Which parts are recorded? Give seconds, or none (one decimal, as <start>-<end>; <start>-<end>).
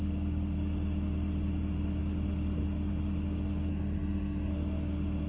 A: 0.0-3.7; 4.5-5.3